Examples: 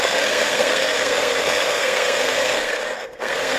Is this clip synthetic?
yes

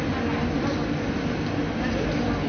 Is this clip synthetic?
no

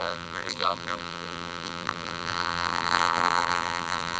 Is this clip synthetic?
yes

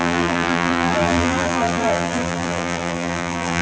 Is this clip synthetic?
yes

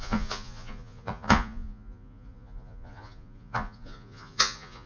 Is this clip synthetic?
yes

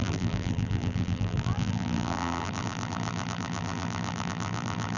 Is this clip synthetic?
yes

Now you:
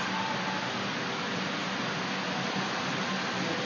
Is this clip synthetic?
no